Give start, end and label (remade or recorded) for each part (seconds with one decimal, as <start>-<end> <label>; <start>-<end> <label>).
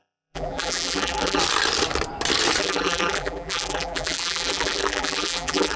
0.0-1.4 remade; 1.4-2.6 recorded; 2.6-5.8 remade